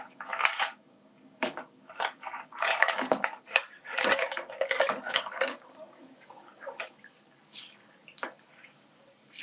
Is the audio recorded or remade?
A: remade